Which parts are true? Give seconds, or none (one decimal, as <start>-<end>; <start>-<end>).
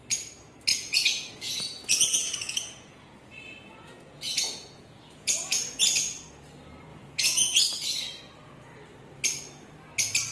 0.0-0.7; 5.8-6.9; 7.6-10.3